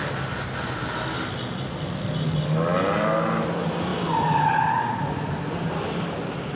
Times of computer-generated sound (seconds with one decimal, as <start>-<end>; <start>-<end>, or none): none